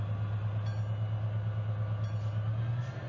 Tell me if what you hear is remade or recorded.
recorded